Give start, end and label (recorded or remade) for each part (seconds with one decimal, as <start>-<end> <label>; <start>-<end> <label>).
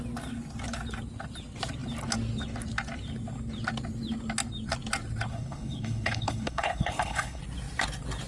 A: 0.0-5.3 recorded; 5.3-7.4 remade; 7.4-8.3 recorded